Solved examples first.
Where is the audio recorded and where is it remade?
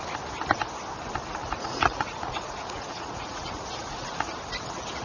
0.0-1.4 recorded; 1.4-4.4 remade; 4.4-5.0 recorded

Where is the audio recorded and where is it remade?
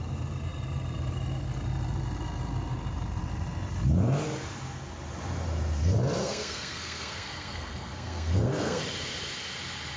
0.0-6.2 recorded; 6.2-8.8 remade; 8.8-10.0 recorded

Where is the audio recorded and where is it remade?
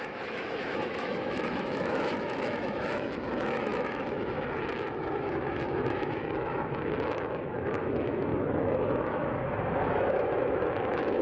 0.0-11.2 remade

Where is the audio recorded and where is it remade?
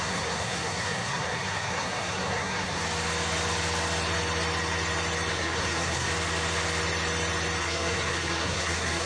0.0-2.8 remade; 2.8-5.3 recorded; 5.3-6.1 remade; 6.1-7.6 recorded; 7.6-9.1 remade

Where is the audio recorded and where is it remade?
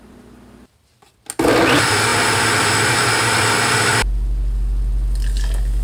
0.0-5.8 recorded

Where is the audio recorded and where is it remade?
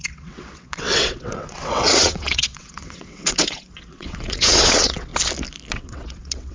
0.0-5.1 remade; 5.1-5.7 recorded; 5.7-6.5 remade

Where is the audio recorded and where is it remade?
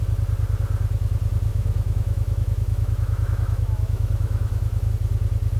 0.0-1.5 recorded; 1.5-4.9 remade; 4.9-5.6 recorded